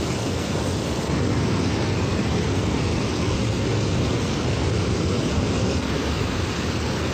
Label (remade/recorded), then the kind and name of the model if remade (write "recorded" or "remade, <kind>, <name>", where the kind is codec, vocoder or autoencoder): remade, codec, SNAC